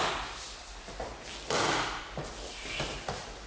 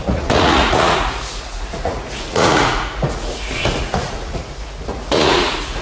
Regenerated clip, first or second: second